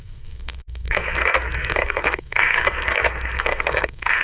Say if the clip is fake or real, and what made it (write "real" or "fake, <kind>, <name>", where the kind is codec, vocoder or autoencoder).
fake, codec, SNAC